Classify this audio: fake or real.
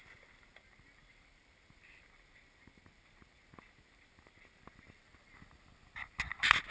real